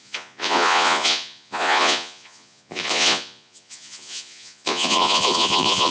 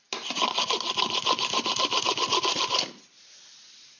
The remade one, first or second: first